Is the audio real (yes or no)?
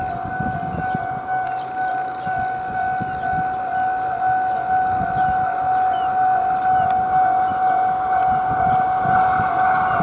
yes